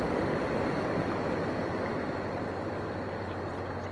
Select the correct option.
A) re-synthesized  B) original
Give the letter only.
B